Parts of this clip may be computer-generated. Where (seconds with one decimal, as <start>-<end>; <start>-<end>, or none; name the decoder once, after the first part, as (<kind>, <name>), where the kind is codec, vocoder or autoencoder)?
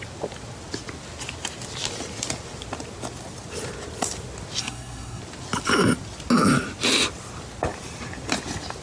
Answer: 4.6-5.2 (codec, SNAC)